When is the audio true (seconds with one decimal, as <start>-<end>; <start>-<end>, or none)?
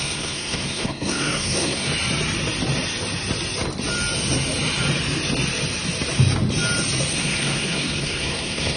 1.9-7.1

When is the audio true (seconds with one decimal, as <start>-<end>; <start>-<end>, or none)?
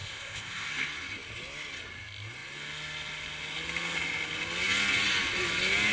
0.7-5.9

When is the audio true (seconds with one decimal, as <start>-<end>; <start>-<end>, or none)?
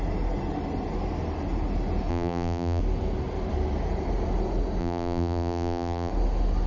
0.0-2.1; 2.8-4.8; 6.1-6.7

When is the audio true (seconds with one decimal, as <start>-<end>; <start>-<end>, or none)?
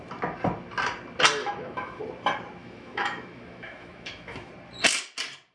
0.0-1.4; 2.0-2.6; 4.5-5.5